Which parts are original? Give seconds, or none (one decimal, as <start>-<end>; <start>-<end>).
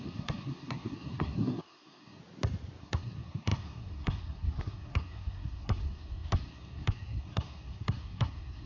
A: 2.2-2.8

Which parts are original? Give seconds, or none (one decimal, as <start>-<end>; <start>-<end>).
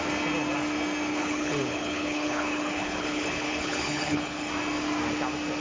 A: 0.0-1.1; 4.5-5.6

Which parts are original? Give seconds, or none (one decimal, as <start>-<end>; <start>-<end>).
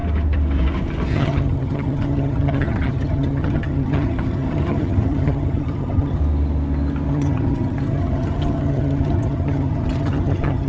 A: 0.0-1.1; 6.2-7.1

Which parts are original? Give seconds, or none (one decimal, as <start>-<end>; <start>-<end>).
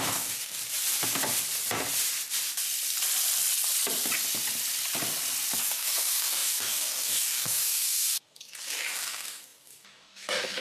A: 0.6-5.6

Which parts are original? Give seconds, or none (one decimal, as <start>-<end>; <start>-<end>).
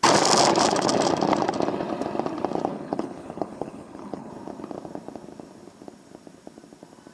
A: 0.0-2.7; 4.3-7.1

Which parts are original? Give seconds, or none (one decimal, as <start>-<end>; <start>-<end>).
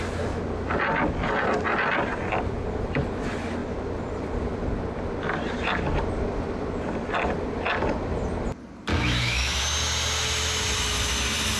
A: 0.0-8.9; 9.6-11.6